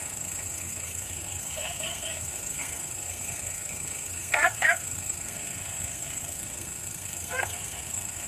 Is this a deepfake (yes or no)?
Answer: yes